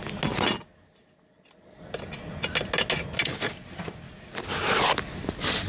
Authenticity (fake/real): real